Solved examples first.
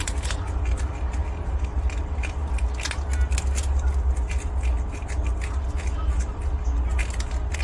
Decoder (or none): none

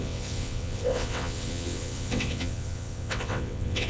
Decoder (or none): vocoder, WaveNeXt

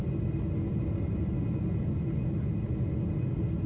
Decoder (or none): none